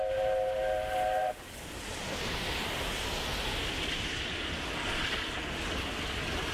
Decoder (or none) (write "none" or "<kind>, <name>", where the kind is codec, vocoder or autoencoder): none